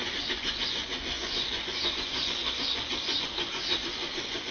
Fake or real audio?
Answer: fake